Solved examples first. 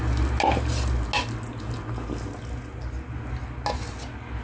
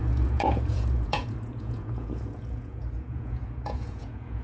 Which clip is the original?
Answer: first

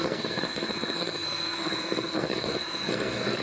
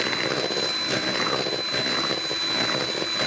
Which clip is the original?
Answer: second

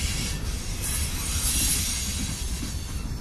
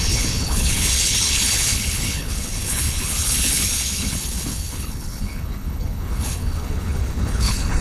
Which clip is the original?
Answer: first